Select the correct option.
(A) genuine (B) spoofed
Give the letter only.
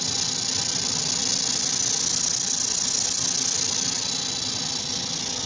A